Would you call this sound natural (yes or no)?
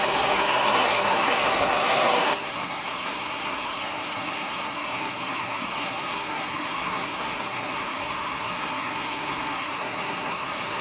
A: no